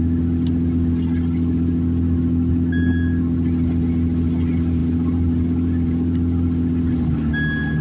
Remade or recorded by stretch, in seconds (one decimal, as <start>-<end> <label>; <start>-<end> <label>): 0.0-7.8 recorded